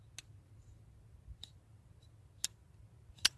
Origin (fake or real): real